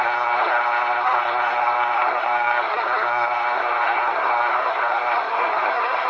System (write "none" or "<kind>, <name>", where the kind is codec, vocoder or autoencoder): codec, SNAC